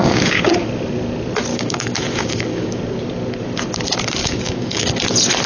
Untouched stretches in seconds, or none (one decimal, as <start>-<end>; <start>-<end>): 0.5-1.5; 2.8-4.2; 4.9-5.5